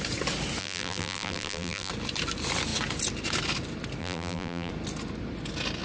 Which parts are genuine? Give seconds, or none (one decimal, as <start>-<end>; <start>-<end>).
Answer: 0.0-0.6; 1.9-4.0; 4.7-5.8